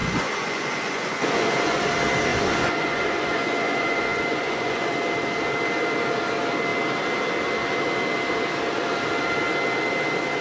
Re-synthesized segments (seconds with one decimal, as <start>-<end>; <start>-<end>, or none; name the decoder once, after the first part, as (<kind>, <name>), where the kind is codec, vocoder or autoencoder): 0.0-1.9 (vocoder, Vocos); 2.3-4.9